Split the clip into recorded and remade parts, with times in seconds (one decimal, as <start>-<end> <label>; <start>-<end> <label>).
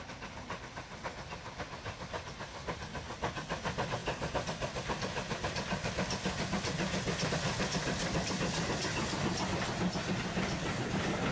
0.0-11.3 recorded